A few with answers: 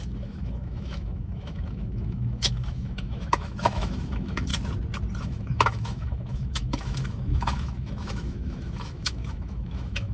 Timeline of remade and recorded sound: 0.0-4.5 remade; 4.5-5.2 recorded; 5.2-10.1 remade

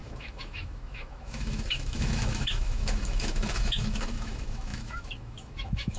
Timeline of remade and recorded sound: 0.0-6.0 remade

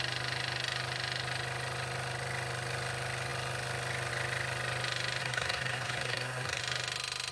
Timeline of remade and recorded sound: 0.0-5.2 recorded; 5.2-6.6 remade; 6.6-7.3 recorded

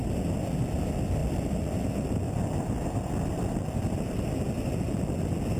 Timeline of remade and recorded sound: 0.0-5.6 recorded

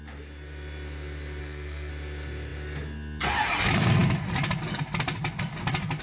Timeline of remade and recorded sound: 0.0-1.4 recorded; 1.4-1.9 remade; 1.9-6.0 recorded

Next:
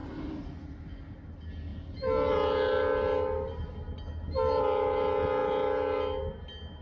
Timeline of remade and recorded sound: 0.0-6.8 recorded